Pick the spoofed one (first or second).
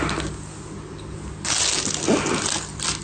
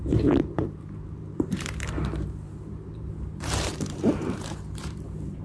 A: second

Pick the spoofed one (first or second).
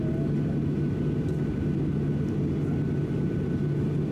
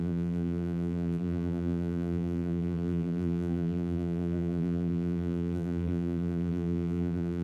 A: second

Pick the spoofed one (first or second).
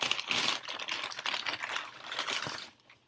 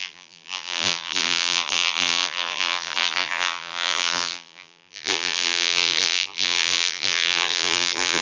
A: second